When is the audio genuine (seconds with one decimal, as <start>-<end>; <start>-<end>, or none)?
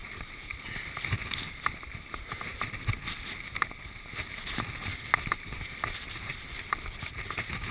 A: 0.0-7.7